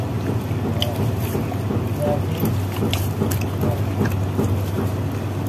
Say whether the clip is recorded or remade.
recorded